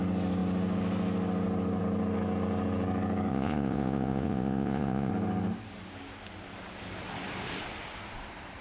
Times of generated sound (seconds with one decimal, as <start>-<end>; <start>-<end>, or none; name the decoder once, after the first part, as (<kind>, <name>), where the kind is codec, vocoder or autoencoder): 3.3-5.1 (vocoder, Vocos)

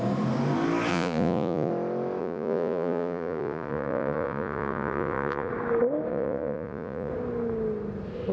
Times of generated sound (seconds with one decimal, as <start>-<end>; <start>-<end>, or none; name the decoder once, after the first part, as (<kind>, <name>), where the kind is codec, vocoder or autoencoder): 0.9-1.7 (vocoder, Vocos); 2.2-5.5; 6.1-7.1

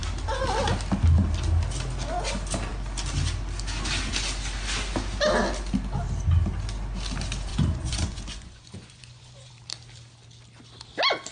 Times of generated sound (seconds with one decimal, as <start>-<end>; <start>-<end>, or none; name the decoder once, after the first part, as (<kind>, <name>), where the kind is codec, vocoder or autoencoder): 7.5-9.5 (vocoder, Vocos)

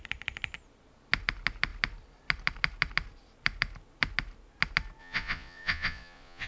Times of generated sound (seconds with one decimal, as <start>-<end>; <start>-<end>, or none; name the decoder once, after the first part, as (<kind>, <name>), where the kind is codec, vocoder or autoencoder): 5.0-6.5 (vocoder, Vocos)

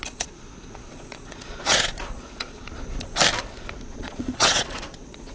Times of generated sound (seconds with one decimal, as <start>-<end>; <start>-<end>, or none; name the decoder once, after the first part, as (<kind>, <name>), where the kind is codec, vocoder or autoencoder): 0.0-3.1 (vocoder, Vocos); 3.9-5.3

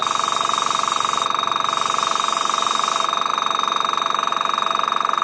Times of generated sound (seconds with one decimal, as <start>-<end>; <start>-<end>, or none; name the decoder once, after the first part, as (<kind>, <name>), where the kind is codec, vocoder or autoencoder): none

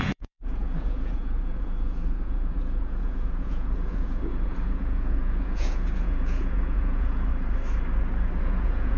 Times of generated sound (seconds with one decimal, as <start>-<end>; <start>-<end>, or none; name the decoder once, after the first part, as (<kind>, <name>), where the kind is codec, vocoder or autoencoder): 0.0-7.3 (vocoder, Vocos); 8.4-9.0